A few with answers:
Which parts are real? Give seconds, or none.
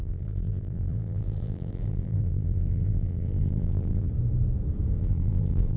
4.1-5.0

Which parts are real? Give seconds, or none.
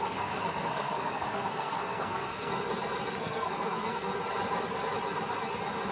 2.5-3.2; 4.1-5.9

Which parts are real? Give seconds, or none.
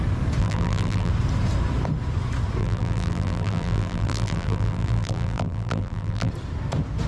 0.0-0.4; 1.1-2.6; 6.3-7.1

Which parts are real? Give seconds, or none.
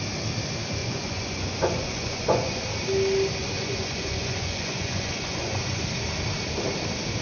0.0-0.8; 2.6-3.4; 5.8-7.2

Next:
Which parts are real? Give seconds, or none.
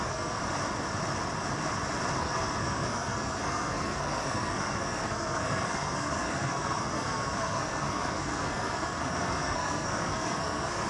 0.4-2.2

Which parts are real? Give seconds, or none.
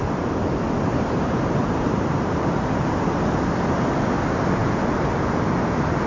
0.0-0.9; 3.3-6.1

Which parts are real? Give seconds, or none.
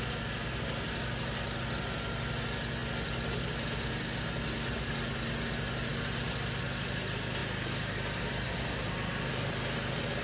0.0-10.2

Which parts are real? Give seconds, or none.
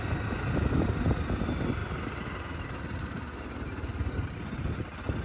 0.0-5.2